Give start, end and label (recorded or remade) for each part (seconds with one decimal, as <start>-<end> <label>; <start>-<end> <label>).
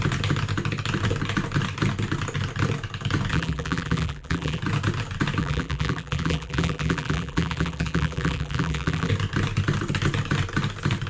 0.0-3.3 recorded; 3.3-4.6 remade; 4.6-5.4 recorded; 5.4-9.1 remade; 9.1-11.1 recorded